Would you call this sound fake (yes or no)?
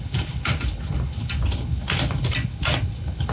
no